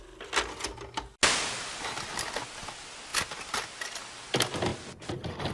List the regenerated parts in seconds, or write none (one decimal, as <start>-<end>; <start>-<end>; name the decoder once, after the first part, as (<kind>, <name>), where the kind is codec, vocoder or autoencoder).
none